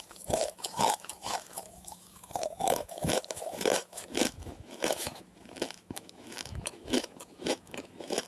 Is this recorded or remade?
remade